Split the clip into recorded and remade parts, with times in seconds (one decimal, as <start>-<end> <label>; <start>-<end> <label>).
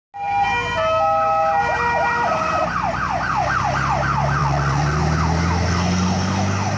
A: 0.0-4.4 recorded; 4.4-5.0 remade; 5.0-6.8 recorded